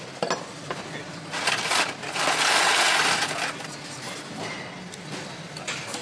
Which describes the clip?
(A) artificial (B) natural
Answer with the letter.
B